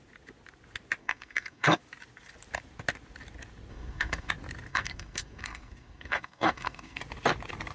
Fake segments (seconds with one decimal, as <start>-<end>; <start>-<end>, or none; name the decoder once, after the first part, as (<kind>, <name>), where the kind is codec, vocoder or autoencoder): 1.0-1.8 (codec, SNAC); 3.7-4.3; 4.7-7.0

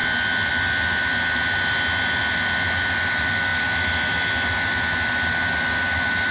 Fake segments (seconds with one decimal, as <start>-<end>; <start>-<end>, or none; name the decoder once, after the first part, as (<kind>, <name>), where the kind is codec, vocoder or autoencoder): none

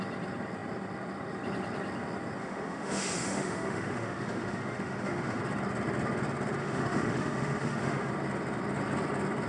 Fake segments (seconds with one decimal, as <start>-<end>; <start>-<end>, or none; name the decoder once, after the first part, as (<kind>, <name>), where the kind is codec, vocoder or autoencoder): 2.4-5.4 (autoencoder, DAC-VAE); 6.6-8.1